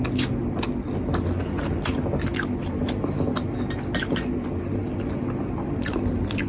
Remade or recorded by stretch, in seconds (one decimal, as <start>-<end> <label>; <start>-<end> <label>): 0.0-6.5 recorded